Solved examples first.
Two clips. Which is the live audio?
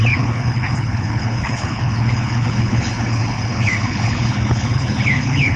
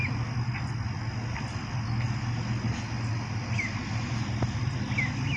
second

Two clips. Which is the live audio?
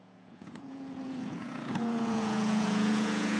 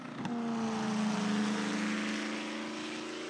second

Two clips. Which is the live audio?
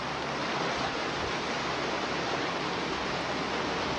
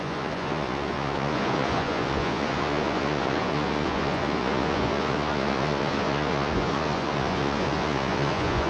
first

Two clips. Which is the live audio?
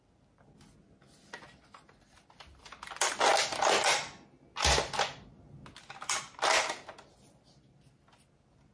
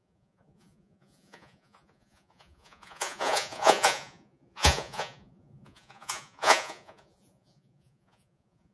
first